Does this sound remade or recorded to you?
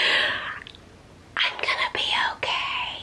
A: recorded